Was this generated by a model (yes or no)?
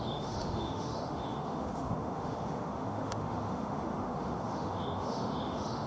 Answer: yes